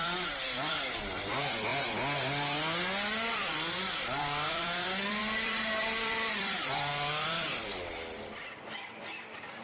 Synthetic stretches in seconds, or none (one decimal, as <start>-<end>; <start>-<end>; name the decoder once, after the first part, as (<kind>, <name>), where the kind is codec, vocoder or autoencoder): 0.0-1.7 (vocoder, BigVGAN v2); 3.3-9.6